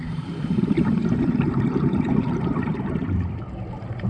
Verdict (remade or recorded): remade